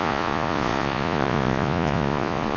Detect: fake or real fake